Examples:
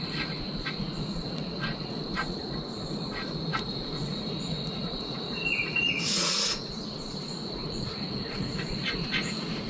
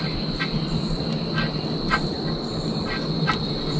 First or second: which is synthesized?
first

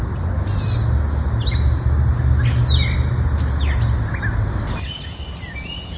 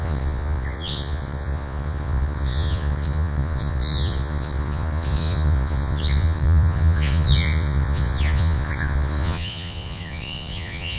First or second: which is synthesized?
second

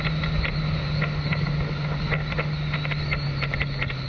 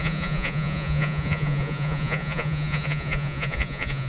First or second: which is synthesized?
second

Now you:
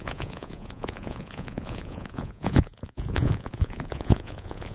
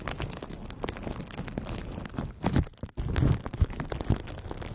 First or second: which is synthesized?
first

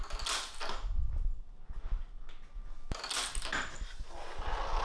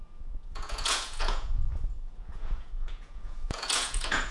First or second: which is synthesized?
second